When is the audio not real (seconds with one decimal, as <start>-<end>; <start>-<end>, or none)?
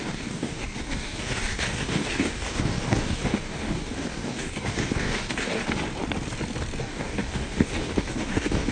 0.0-5.6; 6.8-8.7